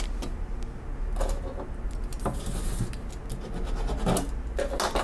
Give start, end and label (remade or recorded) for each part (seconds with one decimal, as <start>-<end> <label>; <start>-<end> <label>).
0.0-5.0 recorded